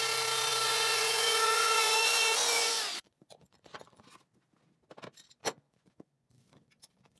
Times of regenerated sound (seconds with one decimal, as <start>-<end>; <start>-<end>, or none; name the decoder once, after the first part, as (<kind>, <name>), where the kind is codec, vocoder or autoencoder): 0.5-4.0 (vocoder, Vocos); 5.4-7.2